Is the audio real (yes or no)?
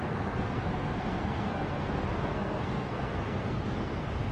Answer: no